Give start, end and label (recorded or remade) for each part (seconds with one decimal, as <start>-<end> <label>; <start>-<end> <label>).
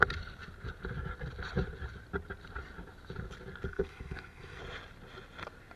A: 0.0-3.7 recorded; 3.7-4.6 remade; 4.6-5.8 recorded